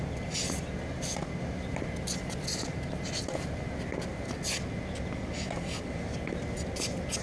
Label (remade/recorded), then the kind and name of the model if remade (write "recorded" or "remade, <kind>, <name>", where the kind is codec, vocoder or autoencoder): recorded